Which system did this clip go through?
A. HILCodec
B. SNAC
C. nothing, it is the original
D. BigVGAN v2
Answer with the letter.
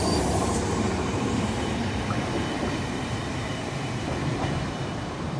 D